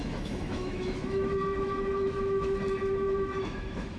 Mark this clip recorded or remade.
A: remade